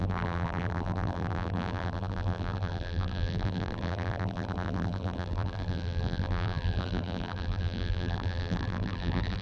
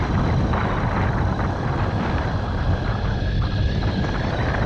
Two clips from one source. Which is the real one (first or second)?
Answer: second